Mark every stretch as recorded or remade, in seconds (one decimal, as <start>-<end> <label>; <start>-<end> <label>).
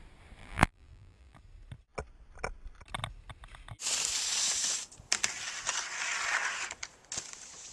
0.0-0.4 recorded; 0.4-1.4 remade; 1.4-7.7 recorded